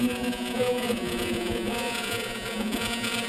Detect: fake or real fake